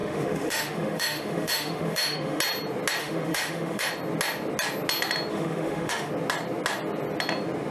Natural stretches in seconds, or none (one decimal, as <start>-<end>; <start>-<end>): 2.4-3.0; 3.9-5.3; 6.1-7.7